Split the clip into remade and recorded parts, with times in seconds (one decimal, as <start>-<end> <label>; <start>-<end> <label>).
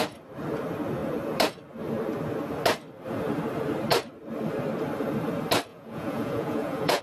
0.0-5.7 recorded; 5.7-7.0 remade